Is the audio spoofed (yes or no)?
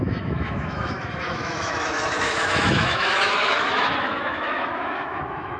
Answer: yes